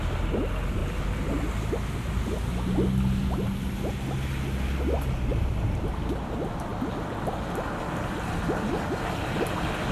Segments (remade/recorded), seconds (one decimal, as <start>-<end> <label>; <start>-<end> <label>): 0.0-5.3 recorded; 5.3-5.8 remade; 5.8-9.9 recorded